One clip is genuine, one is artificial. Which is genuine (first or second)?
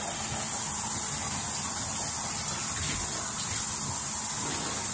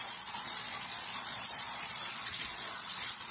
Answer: first